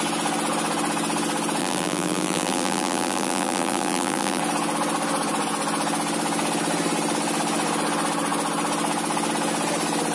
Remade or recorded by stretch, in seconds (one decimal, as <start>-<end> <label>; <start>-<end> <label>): 0.0-1.6 recorded; 1.6-4.4 remade; 4.4-10.1 recorded